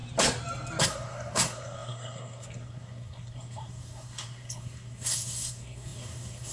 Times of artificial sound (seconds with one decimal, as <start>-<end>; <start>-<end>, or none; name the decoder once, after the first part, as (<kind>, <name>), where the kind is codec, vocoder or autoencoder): 0.8-6.5 (codec, SNAC)